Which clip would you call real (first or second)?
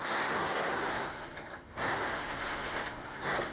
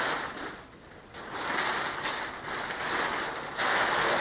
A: second